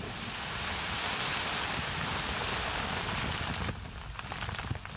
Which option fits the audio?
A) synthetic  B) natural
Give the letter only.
B